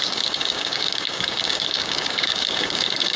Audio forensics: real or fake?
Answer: fake